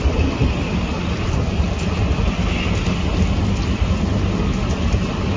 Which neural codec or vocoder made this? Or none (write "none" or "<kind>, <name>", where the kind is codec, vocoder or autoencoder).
none